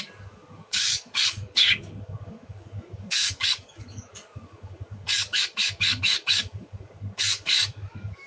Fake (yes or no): yes